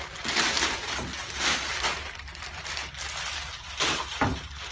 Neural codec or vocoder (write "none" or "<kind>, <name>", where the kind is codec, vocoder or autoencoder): none